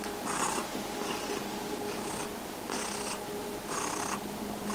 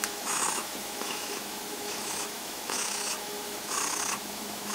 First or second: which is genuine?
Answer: first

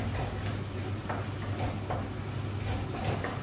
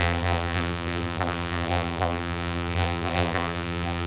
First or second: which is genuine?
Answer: first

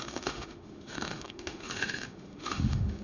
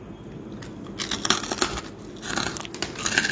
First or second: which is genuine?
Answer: second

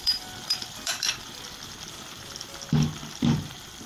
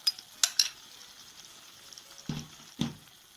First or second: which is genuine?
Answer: second